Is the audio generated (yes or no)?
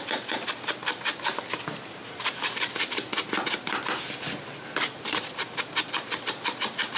yes